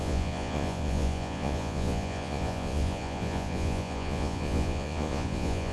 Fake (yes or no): yes